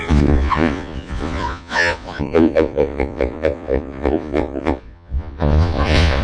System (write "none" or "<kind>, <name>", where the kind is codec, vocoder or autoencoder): vocoder, Vocos